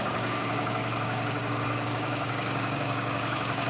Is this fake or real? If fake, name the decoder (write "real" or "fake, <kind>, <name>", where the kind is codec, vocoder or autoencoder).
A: fake, codec, DAC